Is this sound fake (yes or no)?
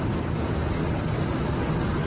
no